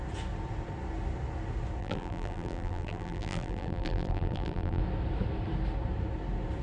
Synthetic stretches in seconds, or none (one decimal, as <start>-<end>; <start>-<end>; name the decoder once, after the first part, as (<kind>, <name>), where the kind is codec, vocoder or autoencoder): 1.8-4.8 (vocoder, BigVGAN v2)